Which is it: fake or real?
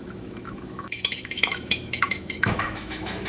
fake